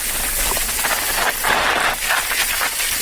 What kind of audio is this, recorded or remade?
recorded